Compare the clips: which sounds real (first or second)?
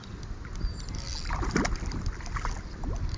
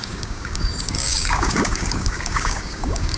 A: first